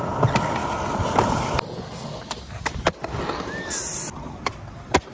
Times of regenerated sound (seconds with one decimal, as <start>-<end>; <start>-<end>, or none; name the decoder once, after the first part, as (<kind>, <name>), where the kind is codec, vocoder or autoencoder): none